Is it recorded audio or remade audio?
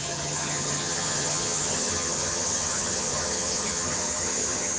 remade